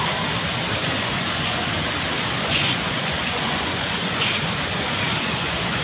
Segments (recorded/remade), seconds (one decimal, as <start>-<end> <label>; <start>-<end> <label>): 0.0-0.8 recorded; 0.8-1.7 remade; 1.7-2.4 recorded; 2.4-5.8 remade